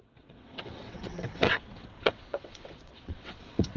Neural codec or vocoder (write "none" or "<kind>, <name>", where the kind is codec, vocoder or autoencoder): vocoder, WaveNeXt